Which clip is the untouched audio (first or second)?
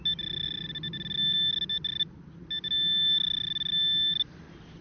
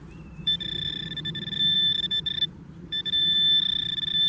first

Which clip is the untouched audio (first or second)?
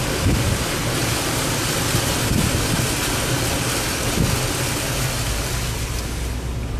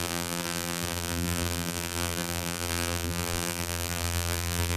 first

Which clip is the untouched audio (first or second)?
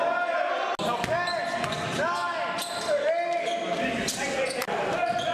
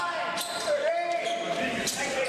first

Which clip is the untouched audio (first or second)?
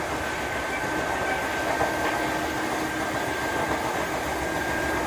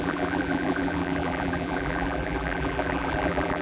first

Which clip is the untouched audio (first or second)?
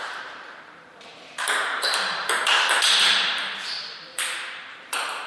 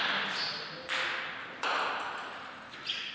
second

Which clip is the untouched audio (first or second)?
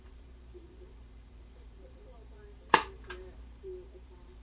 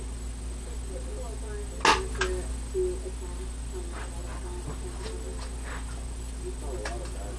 second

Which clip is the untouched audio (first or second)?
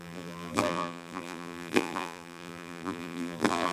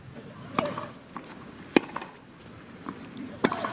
second